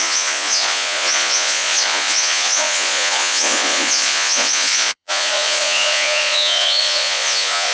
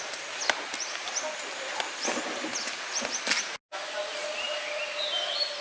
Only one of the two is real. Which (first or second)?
second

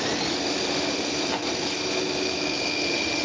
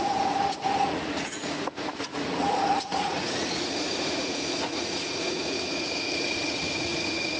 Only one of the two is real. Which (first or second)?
first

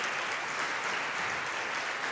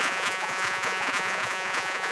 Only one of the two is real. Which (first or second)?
first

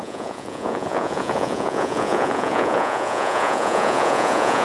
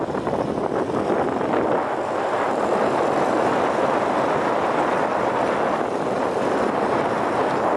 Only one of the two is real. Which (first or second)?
second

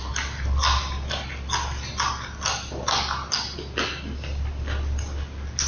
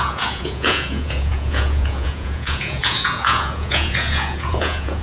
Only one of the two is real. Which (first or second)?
first